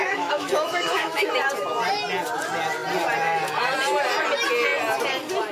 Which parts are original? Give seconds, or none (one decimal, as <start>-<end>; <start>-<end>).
1.3-5.5